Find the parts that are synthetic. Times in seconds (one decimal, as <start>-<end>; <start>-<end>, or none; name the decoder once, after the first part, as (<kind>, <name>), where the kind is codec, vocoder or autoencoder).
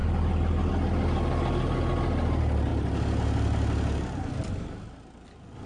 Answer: none